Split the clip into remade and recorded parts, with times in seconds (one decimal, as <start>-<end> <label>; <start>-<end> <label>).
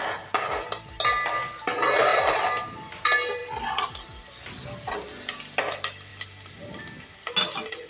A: 0.0-2.1 recorded; 2.1-2.9 remade; 2.9-6.1 recorded; 6.1-6.8 remade; 6.8-7.9 recorded